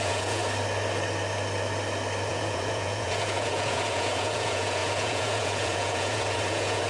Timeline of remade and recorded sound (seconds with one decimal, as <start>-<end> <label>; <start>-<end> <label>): 0.0-0.4 remade; 0.4-2.3 recorded; 2.3-6.9 remade